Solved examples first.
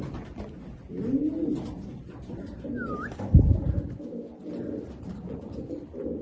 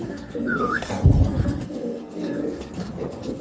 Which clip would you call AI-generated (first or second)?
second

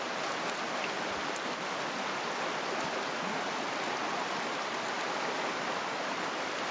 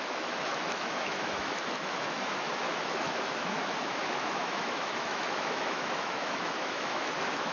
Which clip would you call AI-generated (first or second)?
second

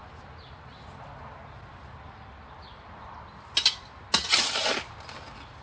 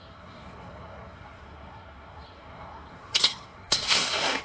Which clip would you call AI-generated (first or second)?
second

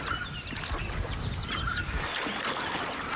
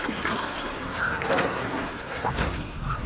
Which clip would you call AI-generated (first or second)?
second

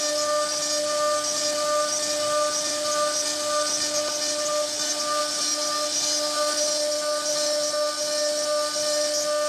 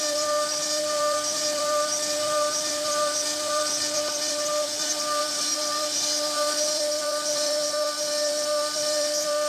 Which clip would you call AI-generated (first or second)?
second